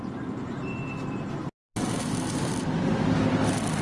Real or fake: real